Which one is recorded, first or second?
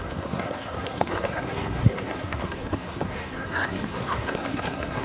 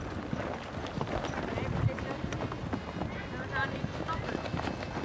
second